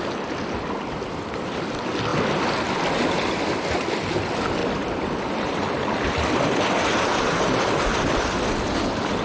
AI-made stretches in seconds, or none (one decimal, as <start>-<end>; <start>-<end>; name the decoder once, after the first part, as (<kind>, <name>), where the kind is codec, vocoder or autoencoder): 4.6-8.3 (vocoder, BigVGAN v2)